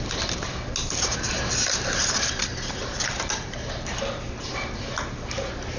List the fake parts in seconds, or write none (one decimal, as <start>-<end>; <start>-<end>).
2.0-4.5